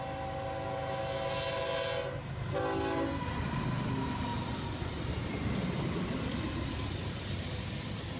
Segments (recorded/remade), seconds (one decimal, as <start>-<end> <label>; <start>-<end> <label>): 0.0-4.3 recorded; 4.3-7.7 remade; 7.7-8.2 recorded